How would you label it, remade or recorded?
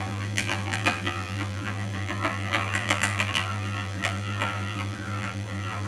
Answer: remade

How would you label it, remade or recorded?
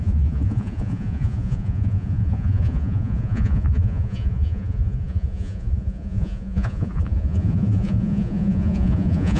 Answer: remade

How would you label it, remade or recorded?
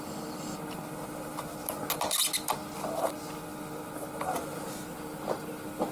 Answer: recorded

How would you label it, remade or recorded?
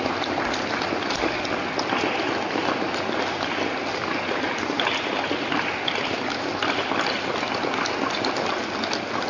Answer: recorded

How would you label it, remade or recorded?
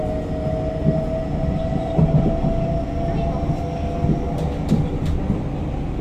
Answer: recorded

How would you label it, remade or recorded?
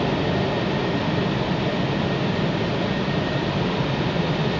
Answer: recorded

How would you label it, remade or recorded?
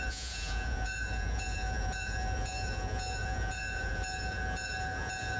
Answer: remade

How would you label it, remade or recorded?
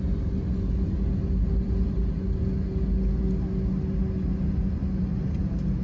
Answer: recorded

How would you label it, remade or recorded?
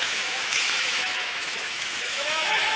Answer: remade